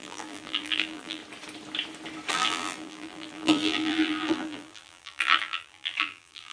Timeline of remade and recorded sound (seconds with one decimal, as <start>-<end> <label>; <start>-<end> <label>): 0.0-1.2 remade; 1.2-2.3 recorded; 2.3-6.5 remade